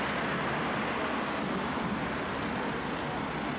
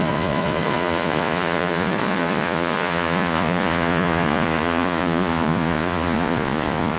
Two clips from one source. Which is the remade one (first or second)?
second